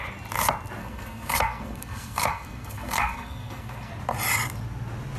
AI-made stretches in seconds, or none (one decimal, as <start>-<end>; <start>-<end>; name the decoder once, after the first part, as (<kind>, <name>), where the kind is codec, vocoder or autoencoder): 0.8-3.9 (codec, SNAC)